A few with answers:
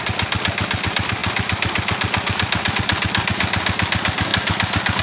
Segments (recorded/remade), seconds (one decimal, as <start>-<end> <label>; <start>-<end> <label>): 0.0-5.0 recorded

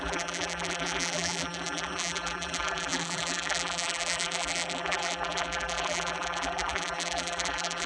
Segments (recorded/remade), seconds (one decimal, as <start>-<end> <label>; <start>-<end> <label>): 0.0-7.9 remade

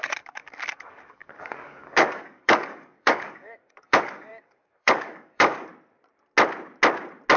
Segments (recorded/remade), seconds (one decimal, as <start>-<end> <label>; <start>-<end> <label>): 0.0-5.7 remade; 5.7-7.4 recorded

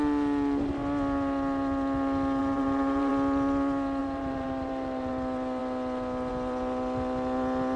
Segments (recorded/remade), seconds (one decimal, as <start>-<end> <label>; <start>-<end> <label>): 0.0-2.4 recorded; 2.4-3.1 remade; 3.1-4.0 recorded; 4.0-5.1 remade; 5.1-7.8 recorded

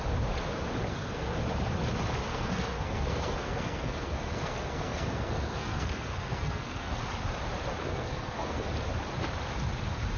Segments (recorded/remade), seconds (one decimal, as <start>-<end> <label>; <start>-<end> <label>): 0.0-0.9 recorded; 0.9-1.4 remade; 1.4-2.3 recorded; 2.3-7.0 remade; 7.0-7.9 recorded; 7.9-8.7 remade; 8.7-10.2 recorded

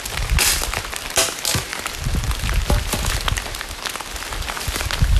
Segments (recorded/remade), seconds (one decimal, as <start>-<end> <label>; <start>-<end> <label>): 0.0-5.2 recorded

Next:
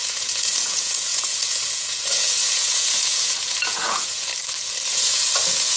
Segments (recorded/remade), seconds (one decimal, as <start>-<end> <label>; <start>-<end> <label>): 0.0-4.3 remade; 4.3-4.9 recorded; 4.9-5.8 remade

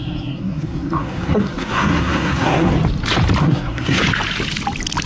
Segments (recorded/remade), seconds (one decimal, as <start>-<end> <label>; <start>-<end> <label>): 0.0-2.7 remade; 2.7-3.4 recorded; 3.4-4.0 remade; 4.0-5.1 recorded